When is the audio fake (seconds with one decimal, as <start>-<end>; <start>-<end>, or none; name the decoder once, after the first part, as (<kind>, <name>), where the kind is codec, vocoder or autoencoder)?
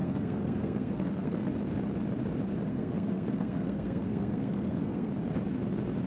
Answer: 0.0-1.5 (codec, SNAC); 2.7-5.1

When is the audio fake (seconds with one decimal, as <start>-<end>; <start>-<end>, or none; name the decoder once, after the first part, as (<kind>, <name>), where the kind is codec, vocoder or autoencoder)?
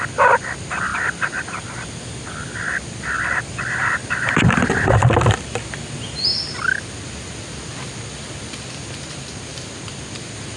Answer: 0.0-0.9 (vocoder, BigVGAN v2); 3.3-6.3; 10.2-10.6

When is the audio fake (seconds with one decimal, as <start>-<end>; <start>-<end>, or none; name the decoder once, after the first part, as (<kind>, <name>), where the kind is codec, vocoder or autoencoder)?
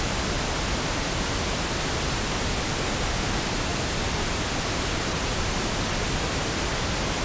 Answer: none